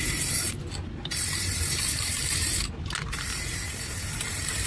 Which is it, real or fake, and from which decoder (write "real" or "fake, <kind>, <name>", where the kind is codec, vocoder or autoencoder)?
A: real